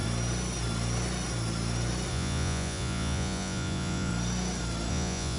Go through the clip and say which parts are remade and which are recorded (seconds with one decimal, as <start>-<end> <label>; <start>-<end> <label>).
0.0-2.1 recorded; 2.1-4.1 remade; 4.1-4.9 recorded; 4.9-5.4 remade